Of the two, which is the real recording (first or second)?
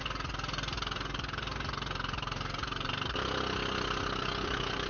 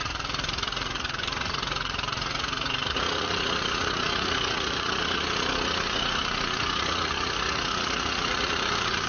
first